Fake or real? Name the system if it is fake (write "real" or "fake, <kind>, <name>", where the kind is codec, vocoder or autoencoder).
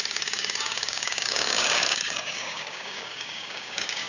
fake, codec, DAC